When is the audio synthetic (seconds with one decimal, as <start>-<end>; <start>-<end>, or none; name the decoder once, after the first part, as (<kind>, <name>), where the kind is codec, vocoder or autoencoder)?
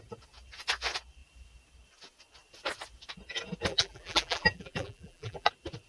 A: 3.7-5.5 (vocoder, BigVGAN v2)